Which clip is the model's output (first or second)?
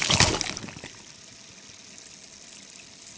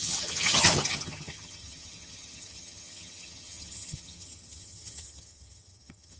second